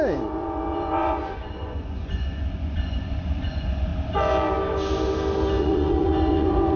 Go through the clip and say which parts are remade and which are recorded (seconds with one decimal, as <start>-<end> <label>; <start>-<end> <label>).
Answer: 0.0-3.9 remade; 3.9-5.6 recorded; 5.6-6.8 remade